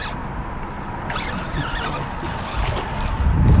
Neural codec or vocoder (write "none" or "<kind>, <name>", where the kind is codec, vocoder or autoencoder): none